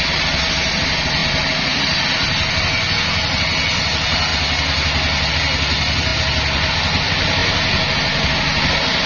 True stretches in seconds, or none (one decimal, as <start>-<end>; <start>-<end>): 0.0-9.1

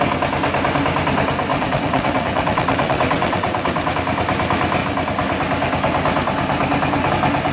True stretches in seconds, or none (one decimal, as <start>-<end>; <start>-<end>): 0.0-1.5; 3.9-7.5

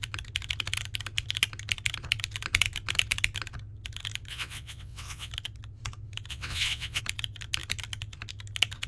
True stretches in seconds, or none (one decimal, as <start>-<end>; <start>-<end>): 0.0-4.3; 5.3-6.3; 7.0-8.9

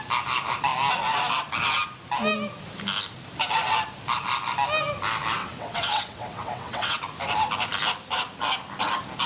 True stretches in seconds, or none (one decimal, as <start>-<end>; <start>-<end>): 0.0-5.4; 7.0-9.3

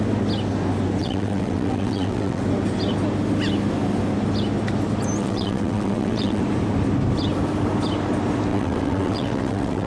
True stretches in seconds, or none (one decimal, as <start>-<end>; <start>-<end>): 0.0-1.0; 2.4-5.2; 6.4-8.5

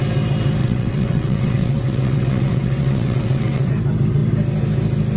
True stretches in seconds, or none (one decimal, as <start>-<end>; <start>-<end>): 0.0-0.6; 3.7-5.2

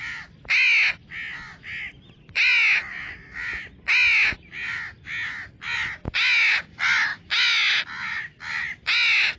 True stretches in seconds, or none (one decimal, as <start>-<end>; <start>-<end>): 0.0-9.4